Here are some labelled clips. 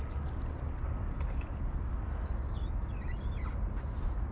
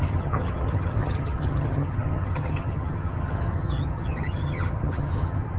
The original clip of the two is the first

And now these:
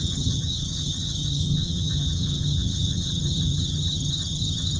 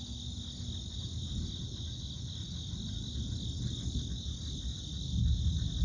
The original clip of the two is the second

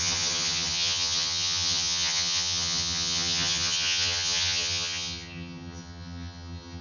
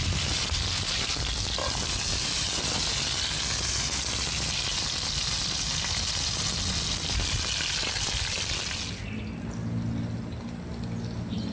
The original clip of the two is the second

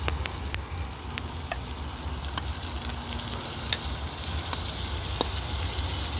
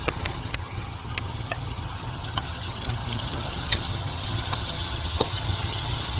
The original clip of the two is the first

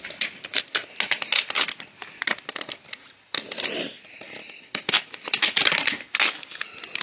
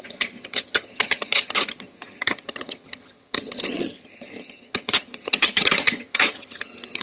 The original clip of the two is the first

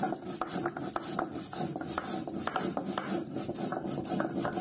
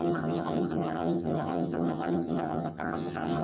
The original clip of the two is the first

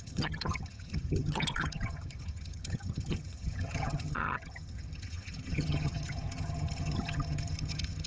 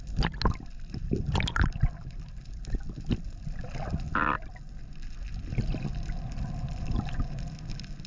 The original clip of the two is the second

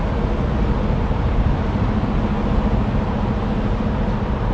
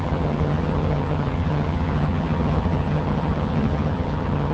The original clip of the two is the first